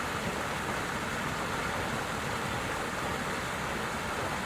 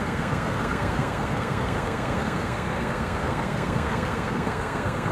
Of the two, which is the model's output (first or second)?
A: second